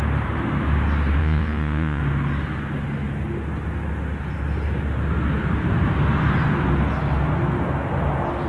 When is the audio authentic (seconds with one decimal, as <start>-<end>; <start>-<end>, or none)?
0.0-1.2; 2.0-8.5